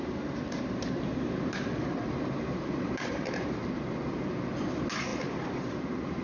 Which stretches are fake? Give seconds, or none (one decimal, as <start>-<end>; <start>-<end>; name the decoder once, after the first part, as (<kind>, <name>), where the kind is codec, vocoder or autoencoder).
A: 0.0-3.7 (vocoder, BigVGAN v2); 5.1-6.2